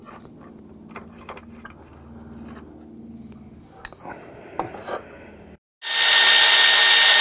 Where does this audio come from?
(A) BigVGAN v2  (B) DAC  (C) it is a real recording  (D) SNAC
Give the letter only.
C